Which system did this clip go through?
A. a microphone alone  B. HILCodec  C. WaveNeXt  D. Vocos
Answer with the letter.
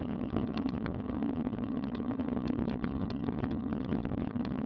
C